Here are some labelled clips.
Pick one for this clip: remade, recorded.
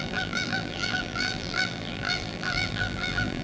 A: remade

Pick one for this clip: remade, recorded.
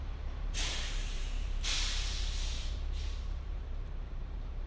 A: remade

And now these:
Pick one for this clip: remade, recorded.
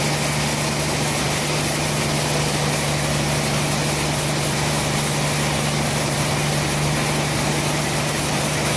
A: recorded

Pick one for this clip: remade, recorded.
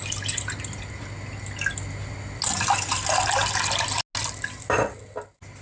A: recorded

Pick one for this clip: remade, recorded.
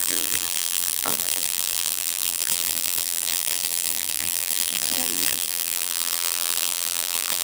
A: remade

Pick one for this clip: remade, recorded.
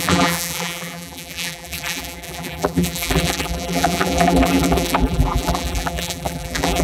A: remade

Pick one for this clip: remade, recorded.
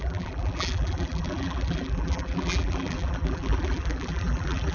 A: remade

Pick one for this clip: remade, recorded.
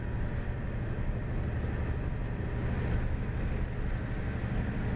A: recorded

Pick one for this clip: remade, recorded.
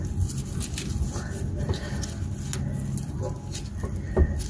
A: recorded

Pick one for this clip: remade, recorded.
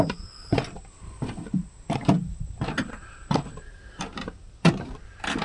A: remade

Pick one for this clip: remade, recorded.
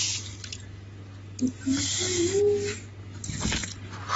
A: recorded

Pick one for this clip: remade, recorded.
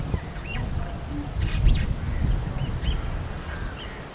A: recorded